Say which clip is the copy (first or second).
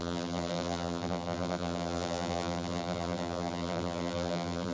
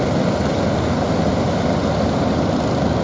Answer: first